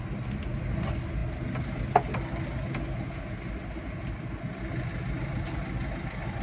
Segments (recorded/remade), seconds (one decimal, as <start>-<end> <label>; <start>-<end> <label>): 0.0-6.4 recorded